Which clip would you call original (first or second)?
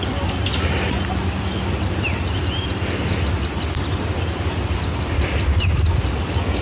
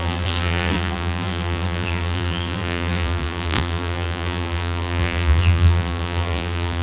first